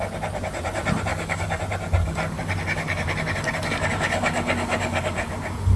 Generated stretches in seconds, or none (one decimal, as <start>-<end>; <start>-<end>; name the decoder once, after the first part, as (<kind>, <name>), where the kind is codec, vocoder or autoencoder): 1.1-1.6 (codec, DAC); 2.0-5.8